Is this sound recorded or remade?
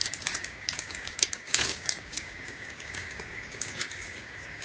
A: remade